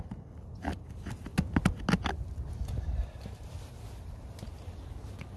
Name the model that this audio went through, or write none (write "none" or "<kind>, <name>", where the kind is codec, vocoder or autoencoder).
none